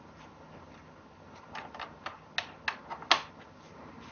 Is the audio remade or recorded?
recorded